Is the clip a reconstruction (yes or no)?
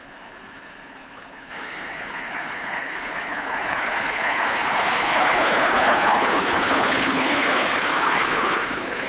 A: yes